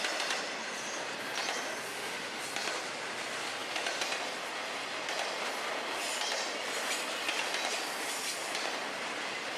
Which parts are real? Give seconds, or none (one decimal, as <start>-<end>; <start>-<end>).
0.0-1.9; 2.4-9.6